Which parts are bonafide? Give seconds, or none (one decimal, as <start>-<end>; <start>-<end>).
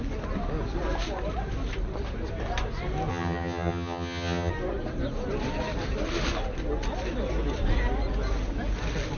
0.0-3.1; 4.5-9.2